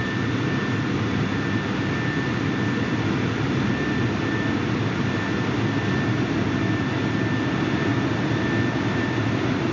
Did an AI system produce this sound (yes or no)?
no